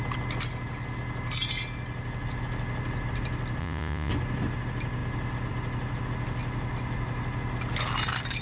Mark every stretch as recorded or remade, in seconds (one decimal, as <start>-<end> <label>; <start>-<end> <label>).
0.0-3.6 recorded; 3.6-4.1 remade; 4.1-8.4 recorded